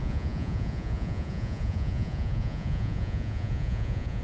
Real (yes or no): no